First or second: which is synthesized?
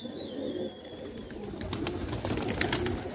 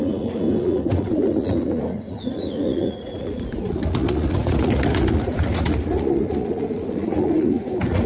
second